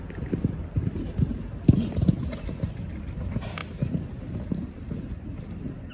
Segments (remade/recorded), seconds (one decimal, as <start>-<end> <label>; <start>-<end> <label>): 0.0-3.6 remade; 3.6-4.7 recorded; 4.7-5.9 remade